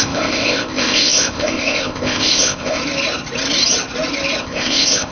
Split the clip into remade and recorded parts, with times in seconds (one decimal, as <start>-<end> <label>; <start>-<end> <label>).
0.0-2.8 remade; 2.8-4.4 recorded; 4.4-5.1 remade